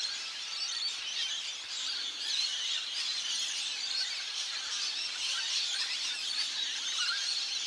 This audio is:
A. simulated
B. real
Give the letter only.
A